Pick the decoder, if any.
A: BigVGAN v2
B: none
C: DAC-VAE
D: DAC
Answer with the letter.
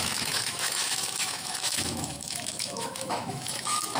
C